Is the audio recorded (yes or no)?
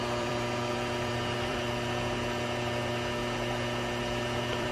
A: no